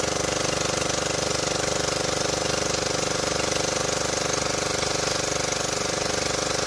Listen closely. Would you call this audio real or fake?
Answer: real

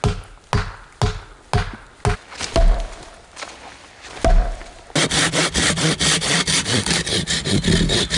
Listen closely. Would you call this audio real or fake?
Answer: real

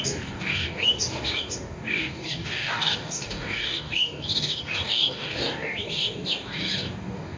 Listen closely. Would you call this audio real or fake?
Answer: fake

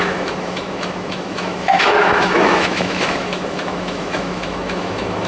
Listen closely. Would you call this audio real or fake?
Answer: fake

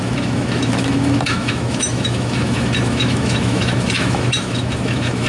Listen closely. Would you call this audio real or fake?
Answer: fake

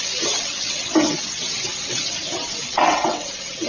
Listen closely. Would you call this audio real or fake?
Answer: fake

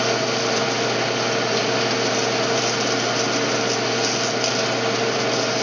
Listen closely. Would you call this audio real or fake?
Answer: real